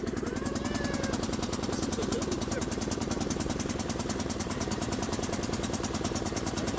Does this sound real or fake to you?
fake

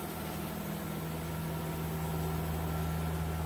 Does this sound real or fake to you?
real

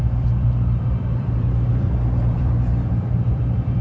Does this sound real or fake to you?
fake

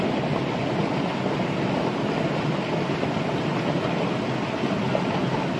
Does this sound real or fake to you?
real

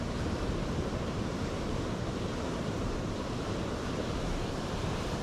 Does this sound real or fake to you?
fake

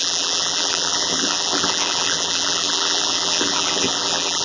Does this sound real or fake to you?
fake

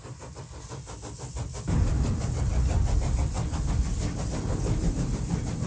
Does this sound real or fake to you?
real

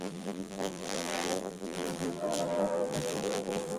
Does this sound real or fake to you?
fake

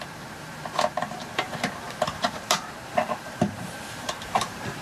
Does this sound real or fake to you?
fake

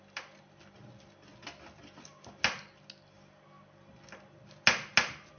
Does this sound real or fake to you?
real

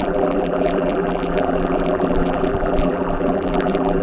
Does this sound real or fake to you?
fake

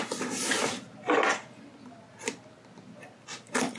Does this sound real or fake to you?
real